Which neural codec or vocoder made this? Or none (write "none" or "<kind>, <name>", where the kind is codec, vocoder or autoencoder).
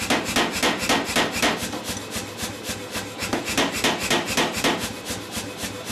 none